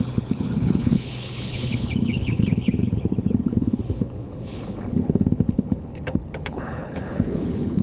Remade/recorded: remade